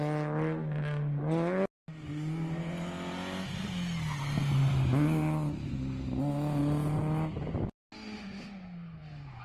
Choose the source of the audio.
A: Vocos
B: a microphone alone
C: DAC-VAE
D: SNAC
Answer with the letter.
B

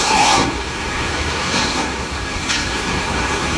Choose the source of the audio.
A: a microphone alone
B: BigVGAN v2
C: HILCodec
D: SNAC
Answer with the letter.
D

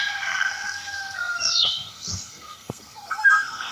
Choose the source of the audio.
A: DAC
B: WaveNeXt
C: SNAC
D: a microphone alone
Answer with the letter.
C